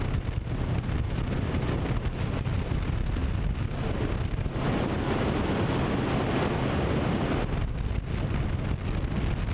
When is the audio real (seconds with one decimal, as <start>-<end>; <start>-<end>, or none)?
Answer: 0.0-9.5